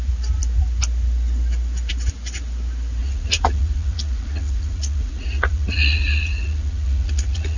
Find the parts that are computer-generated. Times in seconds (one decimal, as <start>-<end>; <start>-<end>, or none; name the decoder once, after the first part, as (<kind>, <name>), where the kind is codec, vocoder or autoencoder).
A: 3.0-7.6 (vocoder, Vocos)